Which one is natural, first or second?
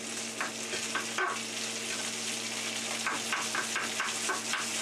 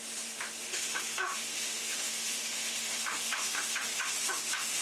first